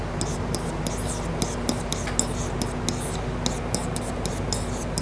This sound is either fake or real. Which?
real